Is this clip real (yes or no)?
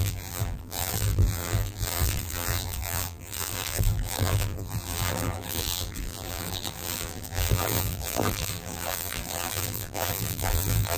no